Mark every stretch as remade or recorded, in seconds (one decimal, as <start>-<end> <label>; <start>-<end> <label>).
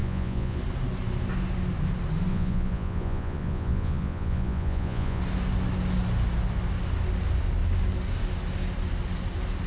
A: 0.0-0.6 remade; 0.6-2.3 recorded; 2.3-5.2 remade; 5.2-9.7 recorded